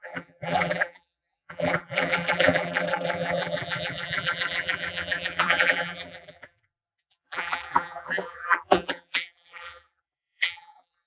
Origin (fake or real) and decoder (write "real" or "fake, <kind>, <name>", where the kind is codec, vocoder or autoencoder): fake, vocoder, BigVGAN v2